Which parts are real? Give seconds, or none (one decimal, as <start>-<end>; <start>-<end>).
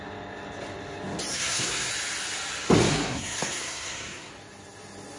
0.0-1.3; 1.9-2.9; 4.3-5.2